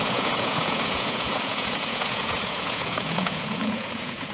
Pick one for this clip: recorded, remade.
remade